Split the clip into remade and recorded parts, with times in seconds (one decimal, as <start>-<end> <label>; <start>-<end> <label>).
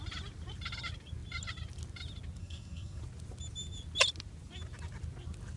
0.0-2.4 recorded; 2.4-3.0 remade; 3.0-5.6 recorded